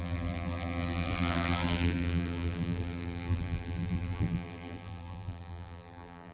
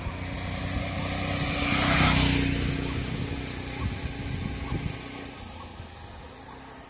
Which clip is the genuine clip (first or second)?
second